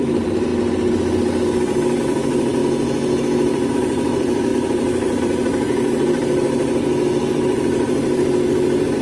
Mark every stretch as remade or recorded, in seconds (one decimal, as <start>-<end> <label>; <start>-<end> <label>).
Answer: 0.0-0.5 remade; 0.5-2.0 recorded; 2.0-2.6 remade; 2.6-3.7 recorded; 3.7-6.2 remade; 6.2-7.2 recorded; 7.2-9.0 remade